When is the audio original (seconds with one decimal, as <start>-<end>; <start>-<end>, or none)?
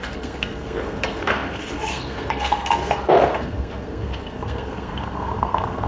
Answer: none